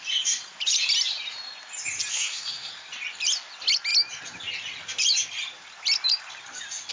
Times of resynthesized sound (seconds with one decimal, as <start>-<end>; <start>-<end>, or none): 2.1-2.7